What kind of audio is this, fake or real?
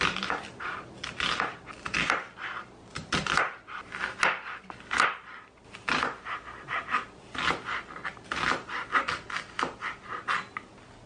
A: real